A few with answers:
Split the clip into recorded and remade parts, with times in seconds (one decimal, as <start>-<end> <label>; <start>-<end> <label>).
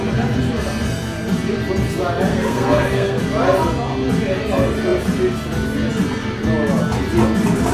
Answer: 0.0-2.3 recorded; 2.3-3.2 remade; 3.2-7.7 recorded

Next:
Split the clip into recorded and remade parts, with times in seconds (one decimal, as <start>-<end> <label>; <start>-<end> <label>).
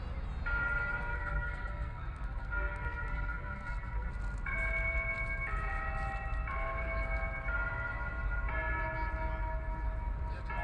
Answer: 0.0-1.1 recorded; 1.1-4.1 remade; 4.1-10.6 recorded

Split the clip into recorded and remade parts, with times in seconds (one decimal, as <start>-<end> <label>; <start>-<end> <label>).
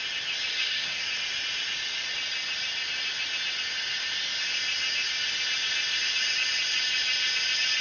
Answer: 0.0-0.5 recorded; 0.5-1.0 remade; 1.0-7.8 recorded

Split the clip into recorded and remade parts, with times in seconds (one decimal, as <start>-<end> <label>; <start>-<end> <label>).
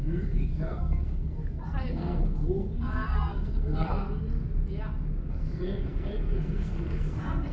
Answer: 0.0-4.0 remade; 4.0-5.3 recorded; 5.3-7.5 remade